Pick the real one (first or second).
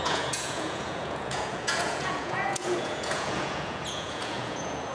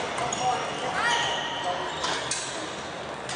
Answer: second